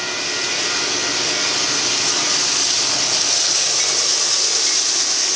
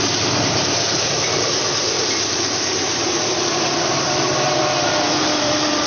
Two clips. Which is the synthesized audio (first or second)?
second